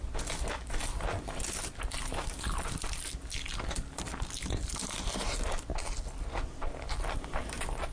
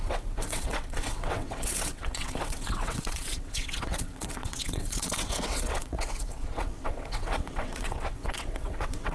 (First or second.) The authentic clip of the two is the first